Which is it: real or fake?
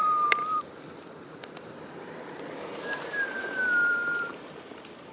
fake